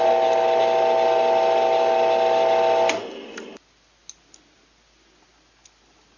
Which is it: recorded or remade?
recorded